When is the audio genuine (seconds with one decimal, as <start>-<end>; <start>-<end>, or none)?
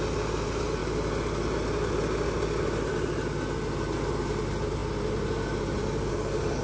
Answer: 0.0-6.6